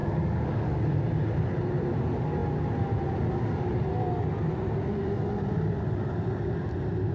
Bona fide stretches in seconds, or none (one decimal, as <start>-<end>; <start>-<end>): 0.8-7.1